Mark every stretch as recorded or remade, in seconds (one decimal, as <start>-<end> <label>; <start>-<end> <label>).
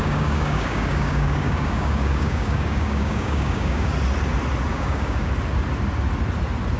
0.0-3.9 remade; 3.9-4.7 recorded; 4.7-5.3 remade; 5.3-6.8 recorded